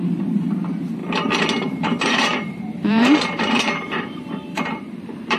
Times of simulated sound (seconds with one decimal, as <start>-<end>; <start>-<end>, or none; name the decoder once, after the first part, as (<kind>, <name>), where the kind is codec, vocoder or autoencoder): 0.0-5.4 (vocoder, BigVGAN v2)